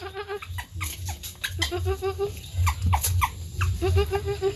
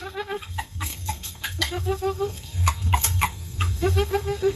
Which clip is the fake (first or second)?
second